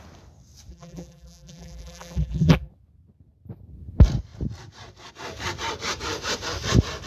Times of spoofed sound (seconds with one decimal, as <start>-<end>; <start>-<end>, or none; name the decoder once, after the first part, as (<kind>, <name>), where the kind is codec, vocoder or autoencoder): 0.7-2.7 (vocoder, BigVGAN v2)